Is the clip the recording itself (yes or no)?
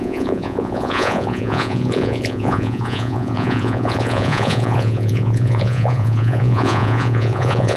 no